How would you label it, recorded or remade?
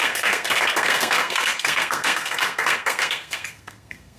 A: remade